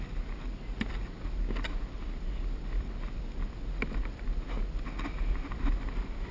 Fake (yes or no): no